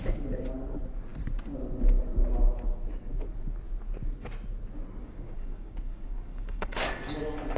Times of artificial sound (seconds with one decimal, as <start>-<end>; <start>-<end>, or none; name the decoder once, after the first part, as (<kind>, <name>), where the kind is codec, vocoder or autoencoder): 5.0-6.9 (codec, DAC)